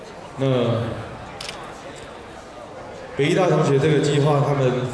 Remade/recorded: recorded